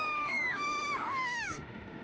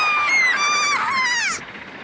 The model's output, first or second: first